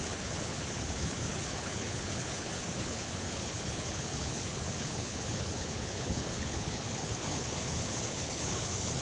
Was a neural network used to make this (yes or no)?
yes